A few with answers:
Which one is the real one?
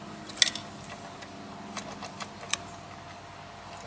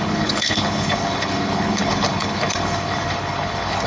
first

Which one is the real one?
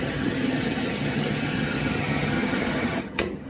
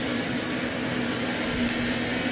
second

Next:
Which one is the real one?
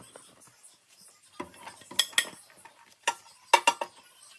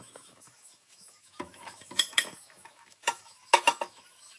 first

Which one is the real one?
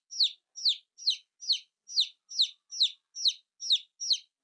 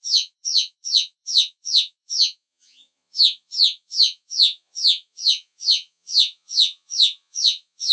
first